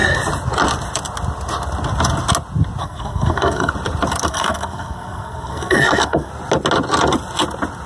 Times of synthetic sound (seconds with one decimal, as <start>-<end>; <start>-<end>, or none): 2.8-3.7; 4.3-6.3